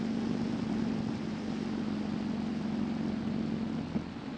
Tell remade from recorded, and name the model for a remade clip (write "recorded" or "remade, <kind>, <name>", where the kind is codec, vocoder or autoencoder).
recorded